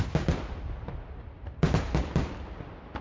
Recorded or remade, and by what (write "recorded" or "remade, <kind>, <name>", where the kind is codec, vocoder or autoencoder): recorded